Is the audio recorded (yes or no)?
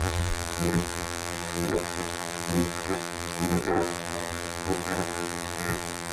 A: no